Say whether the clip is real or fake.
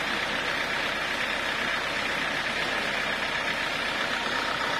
real